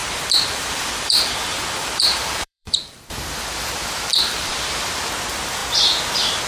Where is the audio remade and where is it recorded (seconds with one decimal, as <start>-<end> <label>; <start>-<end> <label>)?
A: 0.0-3.0 remade; 3.0-4.1 recorded; 4.1-4.7 remade; 4.7-6.5 recorded